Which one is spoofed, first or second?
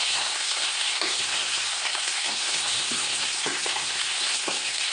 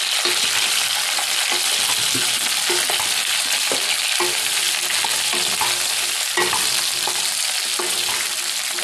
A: first